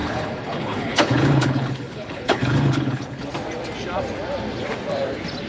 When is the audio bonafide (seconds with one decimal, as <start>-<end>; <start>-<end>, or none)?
3.3-5.5